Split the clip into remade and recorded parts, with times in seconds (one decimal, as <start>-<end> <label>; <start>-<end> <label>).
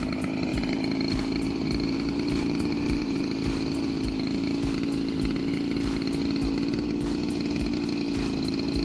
0.0-0.5 recorded; 0.5-3.2 remade; 3.2-8.8 recorded